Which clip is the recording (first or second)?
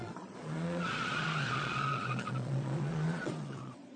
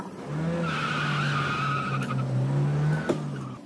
second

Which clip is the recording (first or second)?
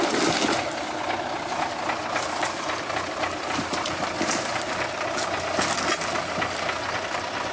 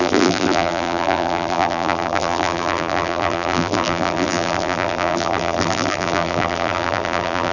first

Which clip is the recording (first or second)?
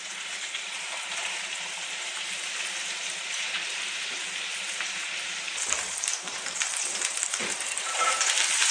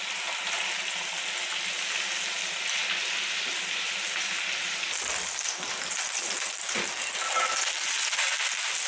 second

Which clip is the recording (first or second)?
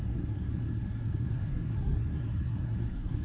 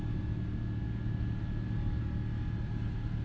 second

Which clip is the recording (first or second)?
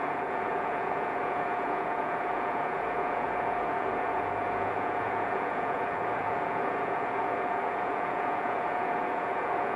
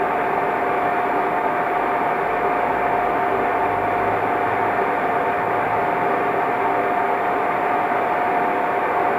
second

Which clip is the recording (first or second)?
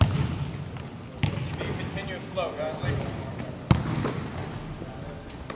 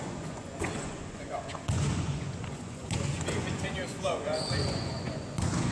first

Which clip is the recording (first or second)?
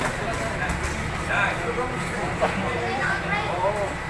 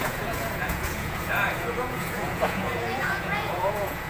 first